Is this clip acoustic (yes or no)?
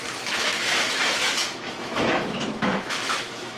no